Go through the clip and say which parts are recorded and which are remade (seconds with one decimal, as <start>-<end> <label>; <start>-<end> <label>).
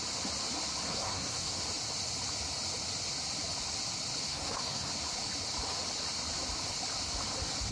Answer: 0.0-0.9 recorded; 0.9-1.6 remade; 1.6-4.3 recorded; 4.3-4.9 remade; 4.9-7.7 recorded